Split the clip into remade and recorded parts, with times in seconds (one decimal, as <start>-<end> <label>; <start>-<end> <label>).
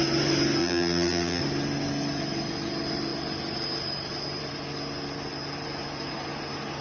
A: 0.0-0.6 recorded; 0.6-1.4 remade; 1.4-6.8 recorded